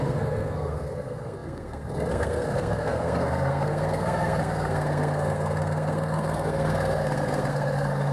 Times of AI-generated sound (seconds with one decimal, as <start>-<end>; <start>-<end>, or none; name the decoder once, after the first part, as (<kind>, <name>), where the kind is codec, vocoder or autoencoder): 0.0-8.1 (codec, SNAC)